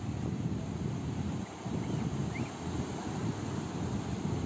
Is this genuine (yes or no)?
yes